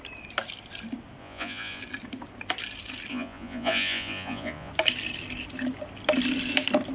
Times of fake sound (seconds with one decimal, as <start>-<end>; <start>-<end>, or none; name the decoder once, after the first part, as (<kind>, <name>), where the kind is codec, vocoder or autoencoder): 1.2-1.8 (vocoder, Vocos); 3.1-4.7